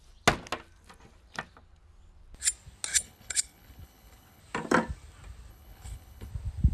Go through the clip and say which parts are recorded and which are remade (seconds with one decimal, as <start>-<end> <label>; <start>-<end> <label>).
0.0-2.9 recorded; 2.9-4.4 remade; 4.4-5.5 recorded; 5.5-6.3 remade; 6.3-6.7 recorded